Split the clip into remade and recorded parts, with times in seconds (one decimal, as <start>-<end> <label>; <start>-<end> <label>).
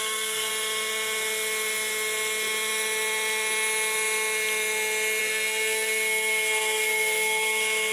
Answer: 0.0-0.5 remade; 0.5-5.2 recorded; 5.2-7.9 remade